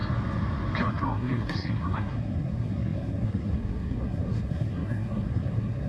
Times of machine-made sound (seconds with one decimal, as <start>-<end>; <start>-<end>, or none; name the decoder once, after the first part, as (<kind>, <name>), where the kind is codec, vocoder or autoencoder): 0.9-5.9 (codec, SNAC)